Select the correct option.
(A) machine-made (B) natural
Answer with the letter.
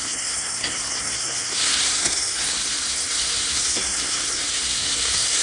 A